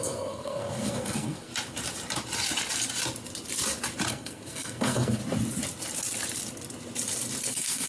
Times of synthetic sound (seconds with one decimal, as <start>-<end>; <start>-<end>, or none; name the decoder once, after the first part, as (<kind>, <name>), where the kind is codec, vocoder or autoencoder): 0.0-1.5 (codec, SNAC); 4.1-5.2; 7.5-7.9